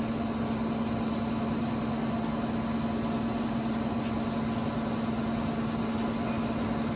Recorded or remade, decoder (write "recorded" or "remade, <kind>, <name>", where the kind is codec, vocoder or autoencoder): recorded